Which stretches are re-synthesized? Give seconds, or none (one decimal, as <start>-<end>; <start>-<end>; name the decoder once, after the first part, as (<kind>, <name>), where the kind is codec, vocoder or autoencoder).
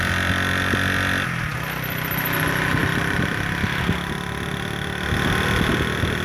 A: none